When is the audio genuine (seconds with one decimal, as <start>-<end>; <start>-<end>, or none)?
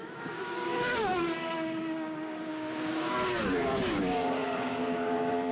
none